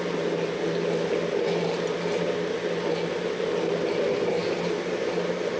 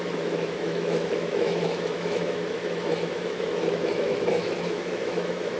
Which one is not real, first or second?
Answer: second